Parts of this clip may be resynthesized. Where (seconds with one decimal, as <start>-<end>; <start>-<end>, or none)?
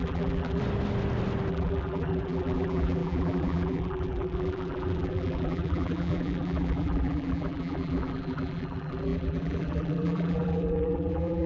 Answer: 0.0-0.6; 1.5-11.5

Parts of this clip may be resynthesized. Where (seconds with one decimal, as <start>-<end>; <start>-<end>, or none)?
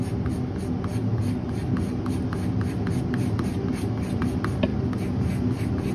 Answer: 0.9-2.3; 3.5-4.3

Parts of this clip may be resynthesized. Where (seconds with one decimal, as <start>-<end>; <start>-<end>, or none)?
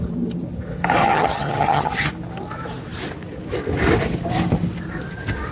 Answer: 1.0-2.1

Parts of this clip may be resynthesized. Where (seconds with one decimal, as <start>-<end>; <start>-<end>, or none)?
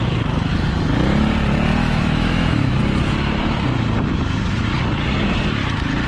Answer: 1.8-2.8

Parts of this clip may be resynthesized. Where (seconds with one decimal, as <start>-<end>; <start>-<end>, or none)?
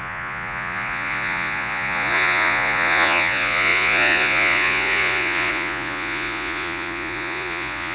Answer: 0.0-7.9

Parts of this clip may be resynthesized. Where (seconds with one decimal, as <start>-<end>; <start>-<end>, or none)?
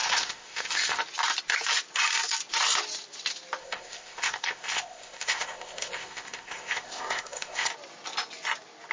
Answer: 0.0-1.0; 3.6-7.7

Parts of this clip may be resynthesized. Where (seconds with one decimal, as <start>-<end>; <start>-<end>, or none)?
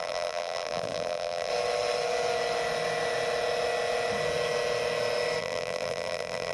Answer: 0.0-1.5; 5.4-6.5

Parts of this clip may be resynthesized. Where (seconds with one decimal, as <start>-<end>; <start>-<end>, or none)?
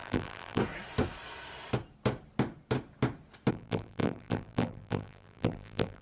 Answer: 0.0-0.6; 3.5-6.0